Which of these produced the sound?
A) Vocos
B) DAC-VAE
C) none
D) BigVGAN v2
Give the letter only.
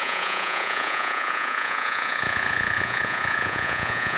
A